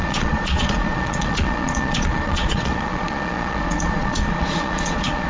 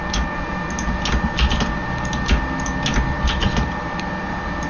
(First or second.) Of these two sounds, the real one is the second